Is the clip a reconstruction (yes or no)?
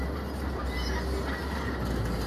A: no